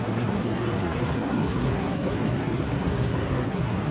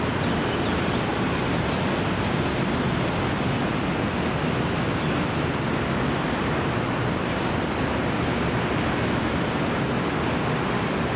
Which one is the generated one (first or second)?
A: first